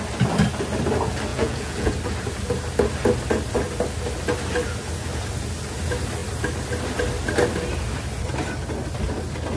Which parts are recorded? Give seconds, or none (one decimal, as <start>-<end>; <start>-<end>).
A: 0.0-1.3; 1.9-9.6